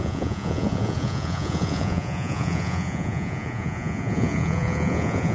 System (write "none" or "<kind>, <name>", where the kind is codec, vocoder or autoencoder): vocoder, Vocos